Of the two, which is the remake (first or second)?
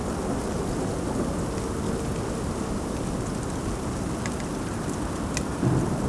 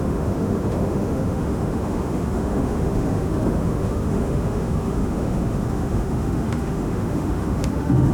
second